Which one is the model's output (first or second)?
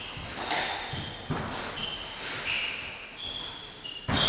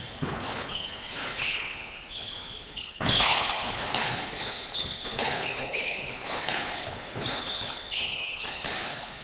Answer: second